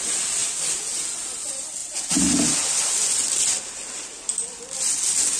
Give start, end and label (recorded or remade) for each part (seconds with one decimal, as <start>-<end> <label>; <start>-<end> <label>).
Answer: 0.0-5.4 recorded